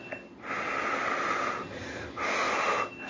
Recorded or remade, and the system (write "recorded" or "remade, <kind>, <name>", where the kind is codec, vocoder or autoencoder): recorded